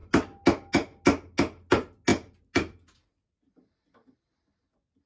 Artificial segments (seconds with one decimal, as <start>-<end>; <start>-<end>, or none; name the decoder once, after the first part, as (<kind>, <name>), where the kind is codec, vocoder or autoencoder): none